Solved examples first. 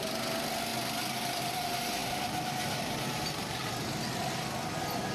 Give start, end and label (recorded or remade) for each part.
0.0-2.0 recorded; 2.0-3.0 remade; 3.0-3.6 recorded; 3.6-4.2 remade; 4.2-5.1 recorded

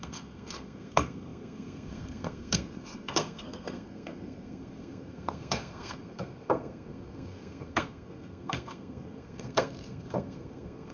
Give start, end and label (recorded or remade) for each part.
0.0-10.9 remade

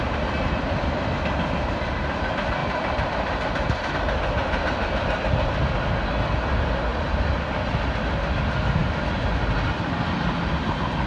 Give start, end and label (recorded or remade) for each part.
0.0-2.6 recorded; 2.6-3.9 remade; 3.9-4.4 recorded; 4.4-5.6 remade; 5.6-6.9 recorded; 6.9-7.7 remade; 7.7-11.1 recorded

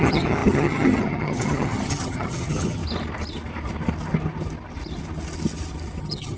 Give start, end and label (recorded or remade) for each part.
0.0-2.8 remade; 2.8-6.0 recorded; 6.0-6.4 remade